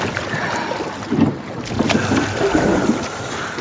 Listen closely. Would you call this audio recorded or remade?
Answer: recorded